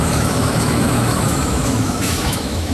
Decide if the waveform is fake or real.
fake